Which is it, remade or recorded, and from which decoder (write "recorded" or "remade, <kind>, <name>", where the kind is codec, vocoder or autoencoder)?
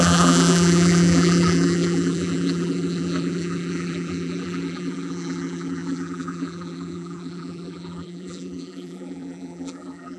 remade, vocoder, BigVGAN v2